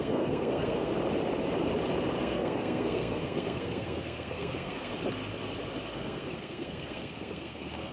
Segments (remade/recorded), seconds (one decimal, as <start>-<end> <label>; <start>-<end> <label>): 0.0-0.9 remade; 0.9-2.2 recorded; 2.2-4.9 remade; 4.9-5.9 recorded; 5.9-7.9 remade